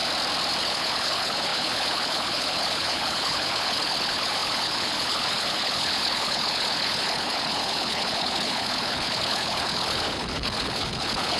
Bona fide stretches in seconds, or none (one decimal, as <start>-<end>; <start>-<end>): 0.0-0.6